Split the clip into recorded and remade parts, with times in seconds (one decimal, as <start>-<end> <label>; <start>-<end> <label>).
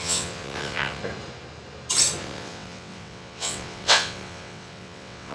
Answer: 0.0-1.0 remade; 1.0-2.2 recorded; 2.2-5.3 remade